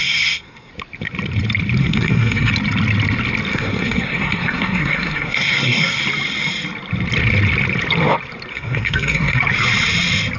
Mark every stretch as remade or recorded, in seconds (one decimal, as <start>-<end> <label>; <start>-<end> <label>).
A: 0.0-0.7 remade; 0.7-1.8 recorded; 1.8-2.5 remade; 2.5-3.5 recorded; 3.5-6.0 remade; 6.0-8.5 recorded; 8.5-9.4 remade; 9.4-10.4 recorded